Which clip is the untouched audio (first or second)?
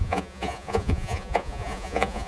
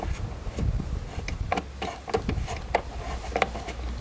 second